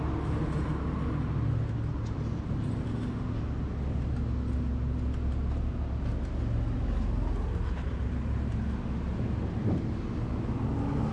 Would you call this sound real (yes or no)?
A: yes